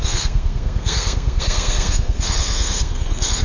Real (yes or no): no